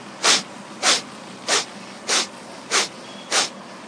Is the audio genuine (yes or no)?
yes